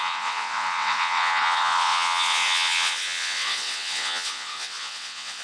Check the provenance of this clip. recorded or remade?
remade